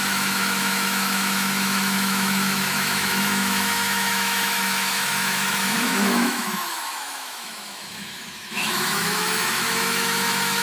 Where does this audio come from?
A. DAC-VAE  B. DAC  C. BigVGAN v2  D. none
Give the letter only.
A